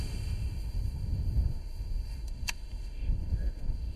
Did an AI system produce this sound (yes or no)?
yes